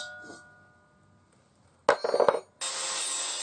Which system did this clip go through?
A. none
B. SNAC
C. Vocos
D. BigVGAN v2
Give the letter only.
A